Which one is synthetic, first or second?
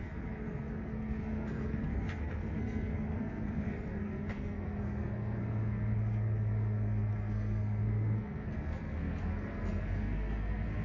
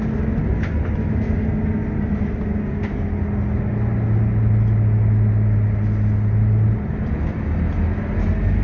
first